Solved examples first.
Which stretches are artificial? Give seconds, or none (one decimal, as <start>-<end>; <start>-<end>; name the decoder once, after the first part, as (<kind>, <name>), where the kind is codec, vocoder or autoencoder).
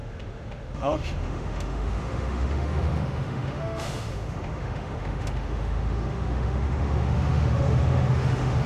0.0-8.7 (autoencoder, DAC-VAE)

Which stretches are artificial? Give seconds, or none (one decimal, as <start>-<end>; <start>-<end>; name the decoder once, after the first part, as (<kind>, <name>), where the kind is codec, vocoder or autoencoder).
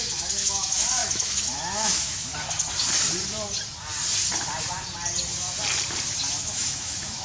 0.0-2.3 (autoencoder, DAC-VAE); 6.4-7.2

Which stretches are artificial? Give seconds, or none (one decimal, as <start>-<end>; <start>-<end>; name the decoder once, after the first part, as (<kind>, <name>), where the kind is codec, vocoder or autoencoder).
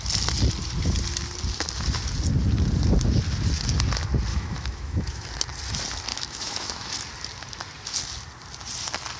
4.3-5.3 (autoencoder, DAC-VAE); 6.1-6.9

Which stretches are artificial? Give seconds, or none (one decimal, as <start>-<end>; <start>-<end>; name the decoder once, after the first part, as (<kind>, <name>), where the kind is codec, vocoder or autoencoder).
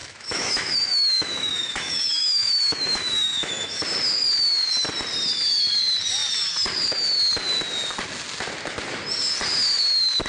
0.0-3.8 (autoencoder, DAC-VAE)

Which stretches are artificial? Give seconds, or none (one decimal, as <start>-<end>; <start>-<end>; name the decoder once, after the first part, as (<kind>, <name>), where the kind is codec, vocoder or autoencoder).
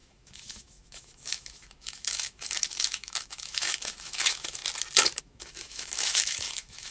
0.0-4.6 (autoencoder, DAC-VAE); 5.2-6.9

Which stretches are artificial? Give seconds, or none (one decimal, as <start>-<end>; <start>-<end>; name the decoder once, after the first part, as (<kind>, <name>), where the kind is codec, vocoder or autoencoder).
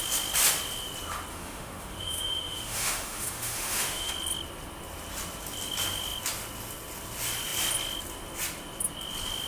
1.3-4.1 (autoencoder, DAC-VAE)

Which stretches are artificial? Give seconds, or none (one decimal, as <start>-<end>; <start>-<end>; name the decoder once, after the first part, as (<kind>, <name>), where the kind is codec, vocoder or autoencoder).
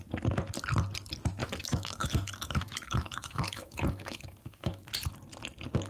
1.4-4.9 (autoencoder, DAC-VAE)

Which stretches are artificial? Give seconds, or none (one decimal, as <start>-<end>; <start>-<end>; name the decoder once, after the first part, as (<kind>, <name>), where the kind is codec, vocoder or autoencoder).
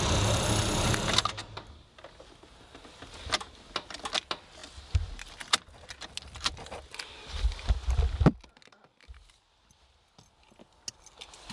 none